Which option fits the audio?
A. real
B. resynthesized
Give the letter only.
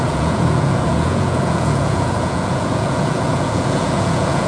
B